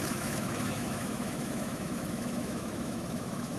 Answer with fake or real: fake